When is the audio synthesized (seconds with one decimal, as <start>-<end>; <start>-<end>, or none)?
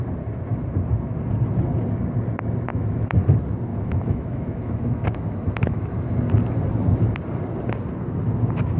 2.7-3.3; 3.7-6.0